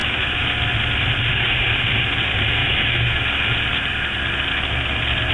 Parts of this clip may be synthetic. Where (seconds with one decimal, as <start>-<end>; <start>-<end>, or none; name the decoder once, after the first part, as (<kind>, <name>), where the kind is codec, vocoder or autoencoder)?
0.0-0.5 (autoencoder, DAC-VAE); 2.6-3.2